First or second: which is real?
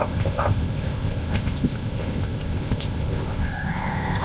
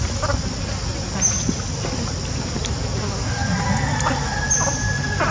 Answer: second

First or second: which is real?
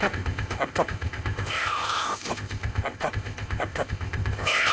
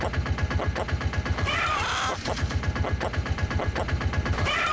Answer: second